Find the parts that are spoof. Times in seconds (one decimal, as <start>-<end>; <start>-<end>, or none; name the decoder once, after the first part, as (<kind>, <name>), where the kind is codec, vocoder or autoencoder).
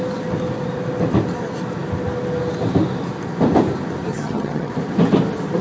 4.1-4.7 (vocoder, HiFi-GAN)